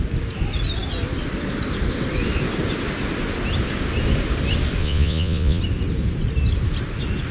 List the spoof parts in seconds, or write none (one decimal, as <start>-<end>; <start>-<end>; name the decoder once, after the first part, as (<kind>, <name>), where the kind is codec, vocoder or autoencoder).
4.8-5.6 (vocoder, Vocos)